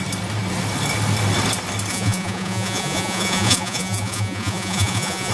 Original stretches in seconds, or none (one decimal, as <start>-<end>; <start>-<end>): 0.0-1.9